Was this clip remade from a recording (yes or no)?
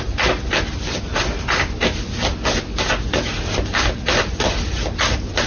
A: no